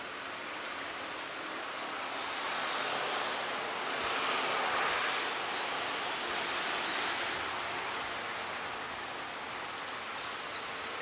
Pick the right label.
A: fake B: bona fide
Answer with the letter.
B